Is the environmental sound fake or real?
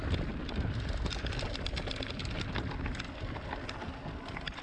real